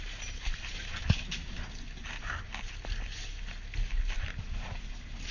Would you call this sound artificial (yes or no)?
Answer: no